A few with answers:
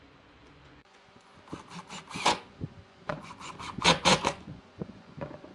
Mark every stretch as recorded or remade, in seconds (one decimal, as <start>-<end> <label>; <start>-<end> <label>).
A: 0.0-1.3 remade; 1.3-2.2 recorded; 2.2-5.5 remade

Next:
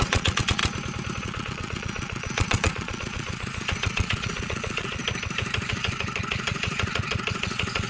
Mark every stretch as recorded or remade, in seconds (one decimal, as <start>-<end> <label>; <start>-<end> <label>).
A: 0.0-0.6 remade; 0.6-1.2 recorded; 1.2-5.0 remade; 5.0-5.7 recorded; 5.7-7.9 remade

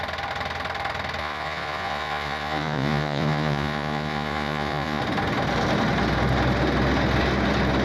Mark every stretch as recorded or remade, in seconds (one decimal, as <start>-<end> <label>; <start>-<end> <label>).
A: 0.0-1.2 recorded; 1.2-5.0 remade; 5.0-7.8 recorded